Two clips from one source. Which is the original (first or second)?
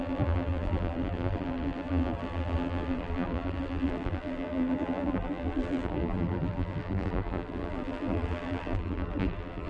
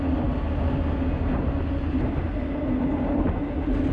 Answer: second